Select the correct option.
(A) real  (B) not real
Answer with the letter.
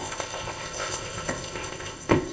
B